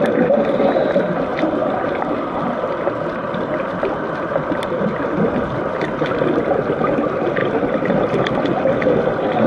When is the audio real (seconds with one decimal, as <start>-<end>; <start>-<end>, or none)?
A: 1.3-2.4; 7.4-9.5